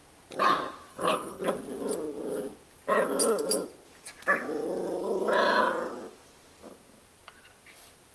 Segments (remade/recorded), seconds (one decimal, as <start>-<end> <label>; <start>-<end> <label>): 0.0-0.9 recorded; 0.9-1.4 remade; 1.4-8.1 recorded